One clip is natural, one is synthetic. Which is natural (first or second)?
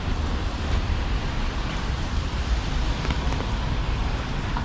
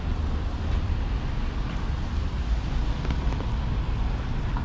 second